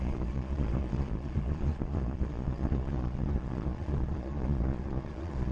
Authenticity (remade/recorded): remade